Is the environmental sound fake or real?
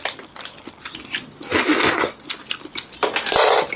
real